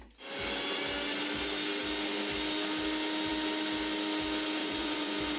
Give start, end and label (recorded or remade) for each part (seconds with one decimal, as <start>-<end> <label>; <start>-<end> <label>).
0.0-4.6 recorded; 4.6-5.4 remade